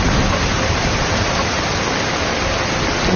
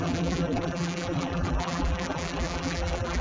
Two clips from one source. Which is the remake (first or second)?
second